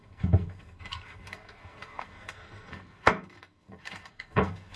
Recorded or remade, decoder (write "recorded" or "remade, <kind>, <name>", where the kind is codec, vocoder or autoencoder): remade, codec, SNAC